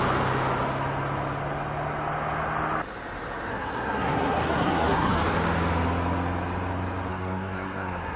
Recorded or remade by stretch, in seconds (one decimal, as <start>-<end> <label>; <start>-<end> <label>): 0.0-3.5 recorded; 3.5-5.2 remade; 5.2-7.1 recorded; 7.1-8.2 remade